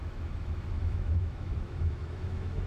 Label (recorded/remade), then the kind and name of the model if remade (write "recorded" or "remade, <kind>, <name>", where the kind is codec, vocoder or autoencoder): remade, autoencoder, DAC-VAE